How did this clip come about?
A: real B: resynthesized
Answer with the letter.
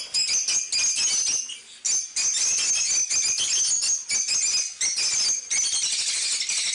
A